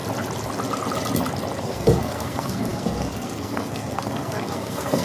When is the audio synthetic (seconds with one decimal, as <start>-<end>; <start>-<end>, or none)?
1.6-5.0